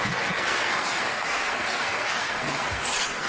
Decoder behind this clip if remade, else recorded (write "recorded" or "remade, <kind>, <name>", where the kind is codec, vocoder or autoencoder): remade, codec, SNAC